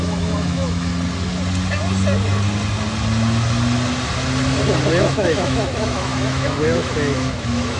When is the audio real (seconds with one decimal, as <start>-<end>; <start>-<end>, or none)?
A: 0.9-5.0